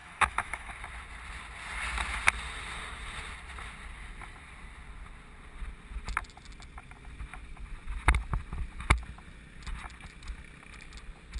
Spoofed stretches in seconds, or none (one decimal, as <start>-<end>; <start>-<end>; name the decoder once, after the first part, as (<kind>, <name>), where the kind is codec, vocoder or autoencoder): 0.0-0.7 (autoencoder, DAC-VAE)